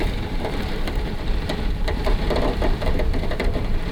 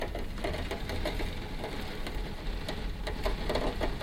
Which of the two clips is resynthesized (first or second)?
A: first